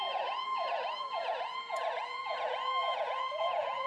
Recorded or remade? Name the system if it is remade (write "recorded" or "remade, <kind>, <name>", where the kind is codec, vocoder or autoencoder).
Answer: remade, vocoder, Vocos